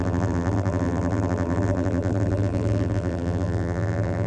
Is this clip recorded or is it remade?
remade